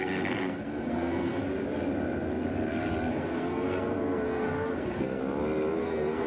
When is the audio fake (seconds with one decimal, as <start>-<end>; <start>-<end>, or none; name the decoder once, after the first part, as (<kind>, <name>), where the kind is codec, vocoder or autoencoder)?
0.0-1.4 (codec, SNAC); 3.1-5.2; 5.8-6.3